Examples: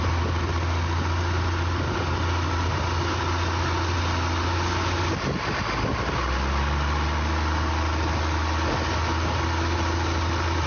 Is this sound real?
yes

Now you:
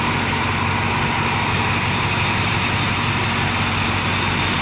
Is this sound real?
yes